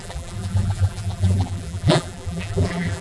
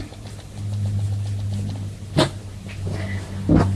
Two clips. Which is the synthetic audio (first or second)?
first